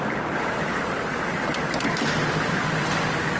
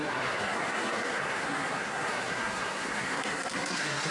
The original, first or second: first